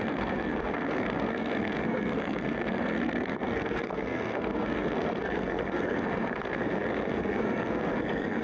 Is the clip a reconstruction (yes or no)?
yes